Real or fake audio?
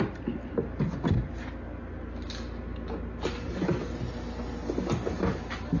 real